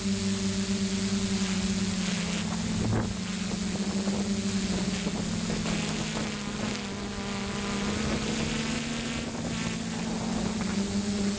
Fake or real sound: real